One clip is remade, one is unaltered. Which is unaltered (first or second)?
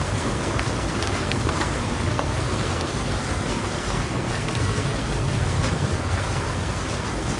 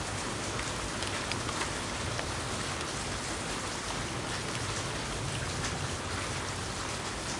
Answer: second